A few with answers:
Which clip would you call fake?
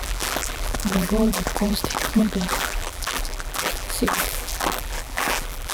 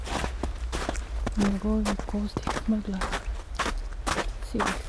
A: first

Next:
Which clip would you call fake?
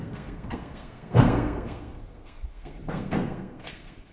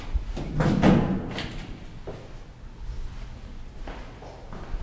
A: first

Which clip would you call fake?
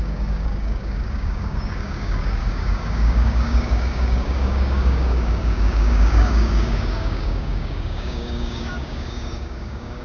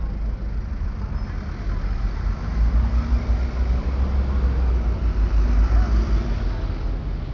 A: first